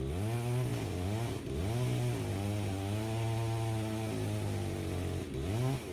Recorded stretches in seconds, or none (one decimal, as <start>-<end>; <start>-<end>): 0.0-5.9